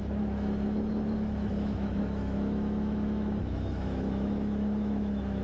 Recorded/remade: remade